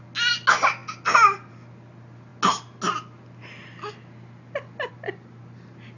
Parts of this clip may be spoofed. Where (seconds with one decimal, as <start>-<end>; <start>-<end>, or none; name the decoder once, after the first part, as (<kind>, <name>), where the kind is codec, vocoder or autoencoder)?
none